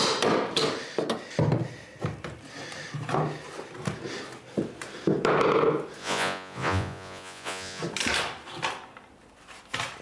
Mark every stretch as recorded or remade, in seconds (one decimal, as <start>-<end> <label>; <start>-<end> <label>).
0.0-6.0 recorded; 6.0-7.8 remade; 7.8-10.0 recorded